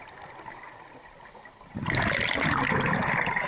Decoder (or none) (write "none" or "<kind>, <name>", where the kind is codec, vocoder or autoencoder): none